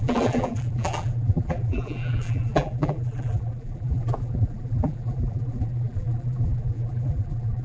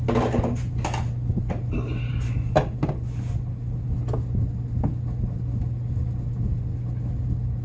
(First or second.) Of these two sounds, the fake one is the first